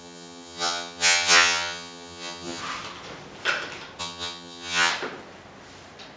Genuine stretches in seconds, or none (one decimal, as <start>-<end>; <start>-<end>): 2.6-4.0; 4.9-6.2